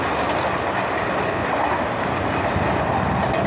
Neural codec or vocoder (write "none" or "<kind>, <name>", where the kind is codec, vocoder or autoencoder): none